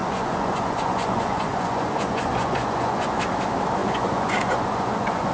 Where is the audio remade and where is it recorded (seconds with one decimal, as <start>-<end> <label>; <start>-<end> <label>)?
0.0-3.2 remade; 3.2-3.8 recorded; 3.8-5.3 remade